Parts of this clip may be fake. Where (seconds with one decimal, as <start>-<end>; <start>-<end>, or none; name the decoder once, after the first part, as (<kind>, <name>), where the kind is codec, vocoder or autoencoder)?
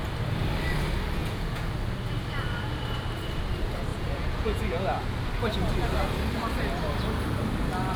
1.2-1.7 (vocoder, Vocos); 3.9-5.0